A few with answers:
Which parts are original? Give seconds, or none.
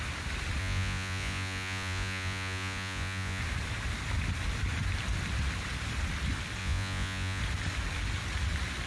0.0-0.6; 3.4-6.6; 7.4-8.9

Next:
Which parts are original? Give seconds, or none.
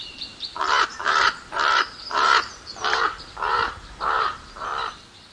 4.7-5.3